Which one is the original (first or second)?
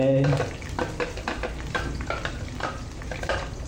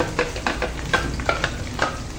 second